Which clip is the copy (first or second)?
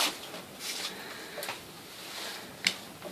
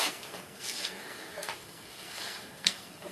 second